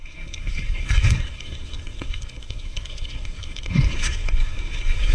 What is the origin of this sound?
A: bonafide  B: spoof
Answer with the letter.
B